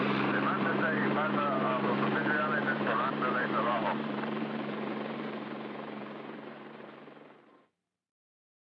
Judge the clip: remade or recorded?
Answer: remade